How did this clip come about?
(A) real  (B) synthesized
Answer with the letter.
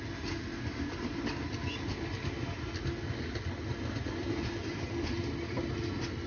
A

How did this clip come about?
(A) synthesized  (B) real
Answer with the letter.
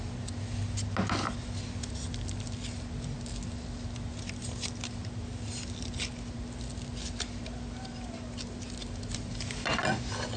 B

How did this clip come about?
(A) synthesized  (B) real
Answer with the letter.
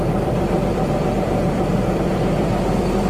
A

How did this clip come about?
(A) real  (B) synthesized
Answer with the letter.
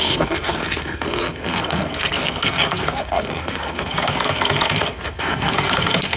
B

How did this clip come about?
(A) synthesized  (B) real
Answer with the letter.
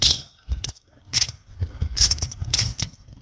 A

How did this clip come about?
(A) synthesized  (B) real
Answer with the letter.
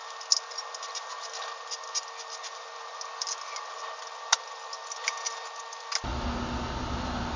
B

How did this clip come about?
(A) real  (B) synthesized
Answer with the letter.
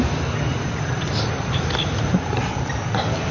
A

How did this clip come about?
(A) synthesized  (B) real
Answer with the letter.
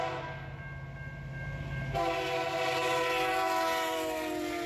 B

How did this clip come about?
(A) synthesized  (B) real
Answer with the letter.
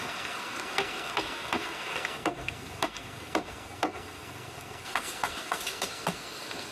A